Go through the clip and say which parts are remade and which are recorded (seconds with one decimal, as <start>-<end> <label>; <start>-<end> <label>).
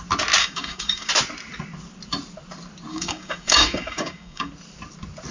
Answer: 0.0-0.4 recorded; 0.4-1.1 remade; 1.1-2.9 recorded; 2.9-4.5 remade; 4.5-5.3 recorded